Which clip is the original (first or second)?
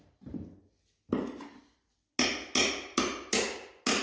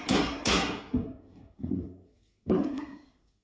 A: first